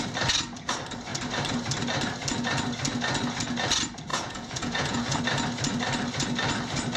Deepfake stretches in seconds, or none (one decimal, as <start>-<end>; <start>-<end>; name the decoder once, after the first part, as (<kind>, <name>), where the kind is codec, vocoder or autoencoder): 4.1-5.2 (vocoder, Vocos)